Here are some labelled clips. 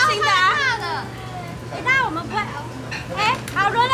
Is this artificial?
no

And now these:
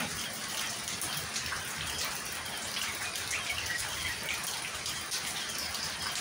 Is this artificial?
no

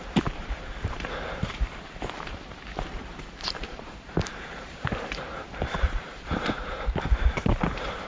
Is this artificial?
yes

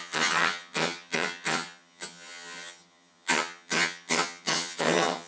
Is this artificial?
yes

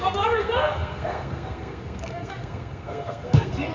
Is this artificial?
yes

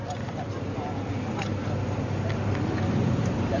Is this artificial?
no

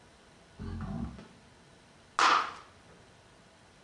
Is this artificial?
no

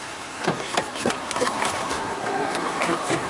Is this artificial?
yes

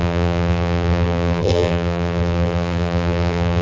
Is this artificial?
yes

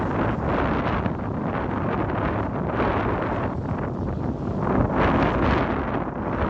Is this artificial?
no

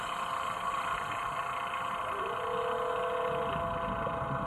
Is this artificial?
no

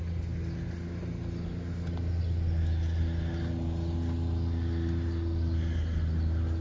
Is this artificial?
no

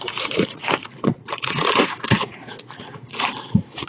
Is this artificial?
yes